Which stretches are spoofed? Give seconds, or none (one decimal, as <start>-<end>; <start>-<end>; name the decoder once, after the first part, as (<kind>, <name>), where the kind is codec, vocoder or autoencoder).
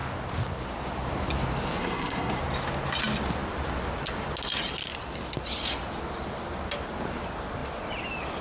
1.8-2.4 (codec, SNAC)